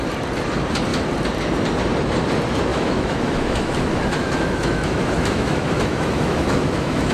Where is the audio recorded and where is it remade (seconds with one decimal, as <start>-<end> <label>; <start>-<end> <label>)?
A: 0.0-2.7 recorded; 2.7-7.1 remade